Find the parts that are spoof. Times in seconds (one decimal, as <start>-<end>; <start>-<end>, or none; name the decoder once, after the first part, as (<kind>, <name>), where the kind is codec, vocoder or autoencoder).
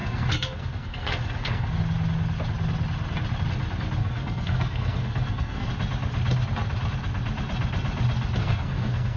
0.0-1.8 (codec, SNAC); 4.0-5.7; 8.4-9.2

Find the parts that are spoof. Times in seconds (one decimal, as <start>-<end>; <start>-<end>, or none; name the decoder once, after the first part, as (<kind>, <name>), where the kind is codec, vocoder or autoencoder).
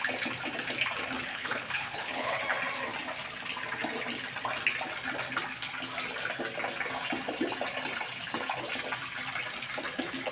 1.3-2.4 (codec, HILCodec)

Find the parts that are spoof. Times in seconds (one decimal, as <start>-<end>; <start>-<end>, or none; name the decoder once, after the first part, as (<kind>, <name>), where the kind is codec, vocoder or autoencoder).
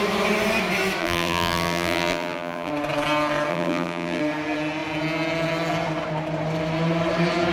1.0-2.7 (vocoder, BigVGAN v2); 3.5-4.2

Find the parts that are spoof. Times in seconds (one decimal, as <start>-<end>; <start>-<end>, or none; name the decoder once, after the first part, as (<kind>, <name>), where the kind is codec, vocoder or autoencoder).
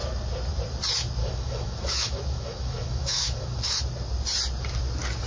1.2-3.8 (autoencoder, DAC-VAE)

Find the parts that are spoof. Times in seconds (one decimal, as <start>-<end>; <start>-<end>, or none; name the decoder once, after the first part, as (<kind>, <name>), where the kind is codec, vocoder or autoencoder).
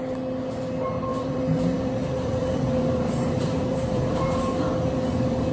1.1-4.4 (vocoder, BigVGAN v2)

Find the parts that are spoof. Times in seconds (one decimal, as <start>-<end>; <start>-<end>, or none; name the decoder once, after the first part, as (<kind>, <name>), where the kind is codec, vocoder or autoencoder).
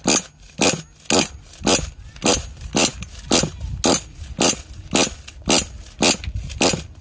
none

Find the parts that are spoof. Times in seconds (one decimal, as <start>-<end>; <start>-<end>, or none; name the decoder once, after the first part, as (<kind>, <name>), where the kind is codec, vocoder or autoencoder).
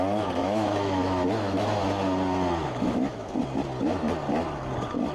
0.4-1.8 (autoencoder, DAC-VAE); 2.6-3.4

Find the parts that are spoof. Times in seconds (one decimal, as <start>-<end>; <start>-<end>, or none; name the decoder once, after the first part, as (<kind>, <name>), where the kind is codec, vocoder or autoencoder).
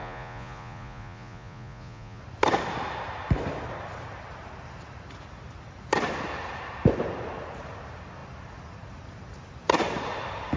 0.0-2.2 (vocoder, Vocos)